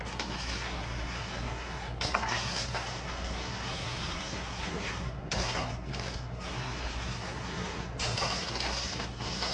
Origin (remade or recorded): remade